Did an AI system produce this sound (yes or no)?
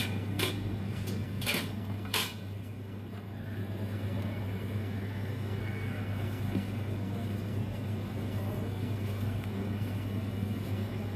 yes